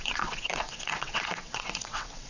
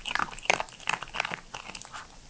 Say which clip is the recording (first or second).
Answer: second